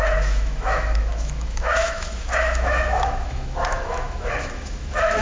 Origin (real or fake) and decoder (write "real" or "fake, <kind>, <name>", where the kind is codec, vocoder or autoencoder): fake, autoencoder, DAC-VAE